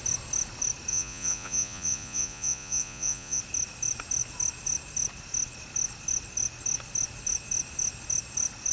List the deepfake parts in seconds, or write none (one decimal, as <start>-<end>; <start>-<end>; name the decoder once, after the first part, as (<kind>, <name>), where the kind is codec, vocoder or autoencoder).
0.9-3.4 (vocoder, Vocos)